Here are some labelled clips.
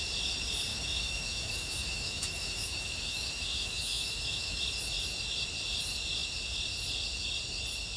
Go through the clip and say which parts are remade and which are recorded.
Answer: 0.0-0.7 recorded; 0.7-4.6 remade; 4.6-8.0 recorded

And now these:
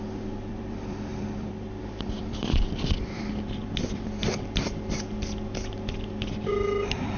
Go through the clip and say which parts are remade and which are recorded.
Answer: 0.0-4.2 remade; 4.2-7.2 recorded

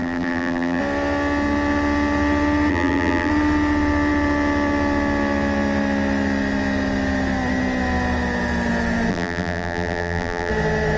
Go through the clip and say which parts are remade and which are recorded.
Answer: 0.0-0.8 remade; 0.8-2.7 recorded; 2.7-3.3 remade; 3.3-9.1 recorded; 9.1-10.5 remade; 10.5-11.0 recorded